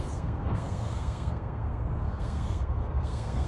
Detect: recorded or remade remade